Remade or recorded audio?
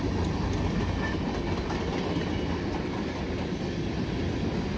recorded